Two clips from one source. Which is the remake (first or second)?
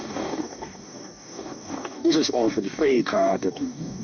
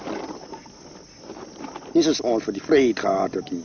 first